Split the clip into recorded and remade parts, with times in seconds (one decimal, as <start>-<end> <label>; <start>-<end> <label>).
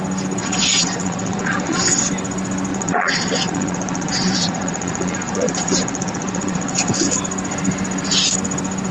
0.0-0.4 recorded; 0.4-2.1 remade; 2.1-2.7 recorded; 2.7-7.0 remade; 7.0-8.9 recorded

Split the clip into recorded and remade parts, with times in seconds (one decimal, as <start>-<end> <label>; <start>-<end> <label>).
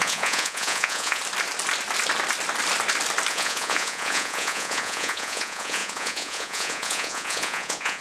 0.0-1.2 remade; 1.2-3.3 recorded; 3.3-8.0 remade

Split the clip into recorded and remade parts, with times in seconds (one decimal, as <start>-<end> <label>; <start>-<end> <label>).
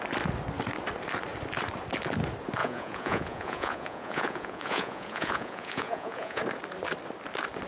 0.0-2.6 recorded; 2.6-6.4 remade; 6.4-7.7 recorded